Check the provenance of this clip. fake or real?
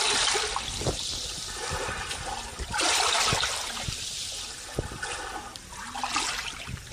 real